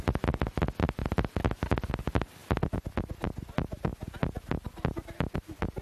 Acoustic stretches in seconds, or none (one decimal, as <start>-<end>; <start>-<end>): 0.0-5.8